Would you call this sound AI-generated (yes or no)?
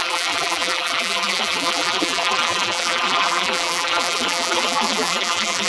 yes